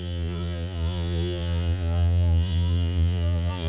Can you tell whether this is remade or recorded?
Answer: remade